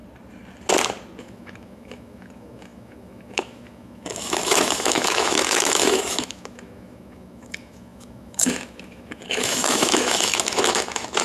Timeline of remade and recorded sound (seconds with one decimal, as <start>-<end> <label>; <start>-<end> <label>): 0.0-1.2 recorded; 1.2-11.2 remade